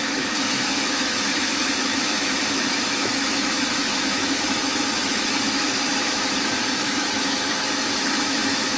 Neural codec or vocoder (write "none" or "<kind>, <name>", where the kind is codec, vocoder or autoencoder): autoencoder, DAC-VAE